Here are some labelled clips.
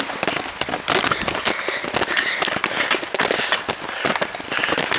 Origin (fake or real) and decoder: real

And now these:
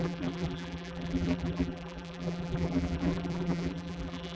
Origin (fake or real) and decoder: fake, vocoder, BigVGAN v2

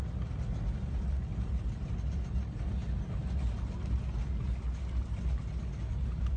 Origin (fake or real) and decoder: real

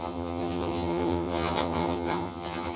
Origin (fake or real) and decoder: fake, vocoder, HiFi-GAN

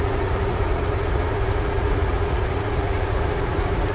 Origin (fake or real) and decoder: fake, vocoder, Vocos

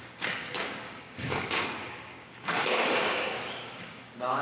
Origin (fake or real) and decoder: fake, codec, DAC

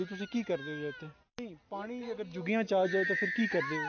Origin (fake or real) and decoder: real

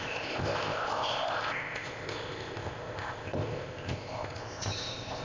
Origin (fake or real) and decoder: fake, codec, ZipCodec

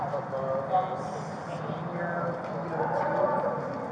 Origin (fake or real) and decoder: real